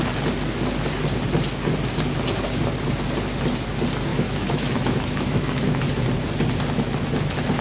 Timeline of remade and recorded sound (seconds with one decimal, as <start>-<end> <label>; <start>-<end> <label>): 0.0-4.1 recorded; 4.1-5.8 remade; 5.8-7.6 recorded

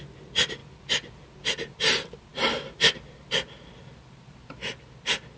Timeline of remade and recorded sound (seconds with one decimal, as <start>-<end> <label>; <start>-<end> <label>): 0.0-0.6 recorded; 0.6-1.8 remade; 1.8-2.3 recorded; 2.3-4.7 remade; 4.7-5.4 recorded

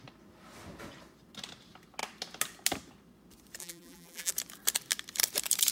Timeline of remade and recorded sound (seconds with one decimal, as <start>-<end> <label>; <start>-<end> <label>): 0.0-3.6 recorded; 3.6-4.3 remade; 4.3-5.7 recorded

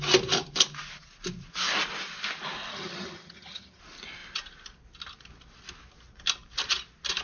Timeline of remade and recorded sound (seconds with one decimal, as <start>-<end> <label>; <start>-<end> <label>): 0.0-2.7 recorded; 2.7-3.8 remade; 3.8-7.2 recorded

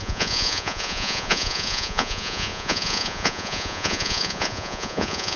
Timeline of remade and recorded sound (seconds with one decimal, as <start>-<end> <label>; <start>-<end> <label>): 0.0-5.4 remade

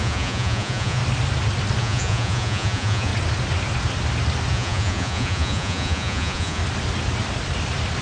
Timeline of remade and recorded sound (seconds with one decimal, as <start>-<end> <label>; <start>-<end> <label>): 0.0-1.0 remade; 1.0-1.8 recorded; 1.8-3.1 remade; 3.1-4.5 recorded; 4.5-6.6 remade; 6.6-8.0 recorded

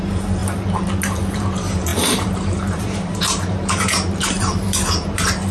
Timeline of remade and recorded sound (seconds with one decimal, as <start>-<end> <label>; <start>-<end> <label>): 0.0-0.4 remade; 0.4-1.3 recorded; 1.3-5.5 remade

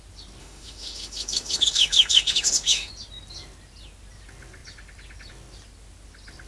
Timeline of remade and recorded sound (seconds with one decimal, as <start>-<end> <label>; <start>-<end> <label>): 0.0-0.4 recorded; 0.4-2.9 remade; 2.9-6.5 recorded